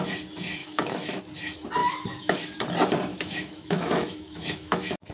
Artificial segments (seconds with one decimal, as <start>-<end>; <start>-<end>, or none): 0.6-1.2; 1.8-2.6; 3.1-5.1